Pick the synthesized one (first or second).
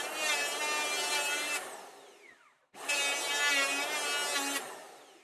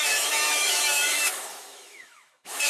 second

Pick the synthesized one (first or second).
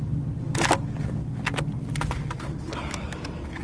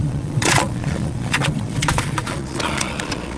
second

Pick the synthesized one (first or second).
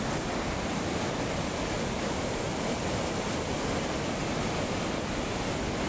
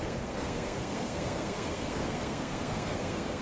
second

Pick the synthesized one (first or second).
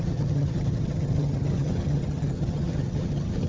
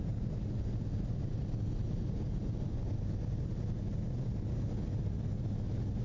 first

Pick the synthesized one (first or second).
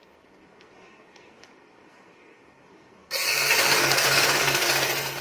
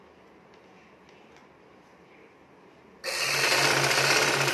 first